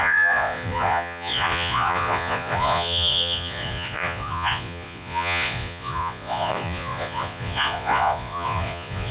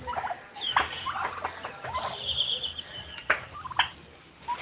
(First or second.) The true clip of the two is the second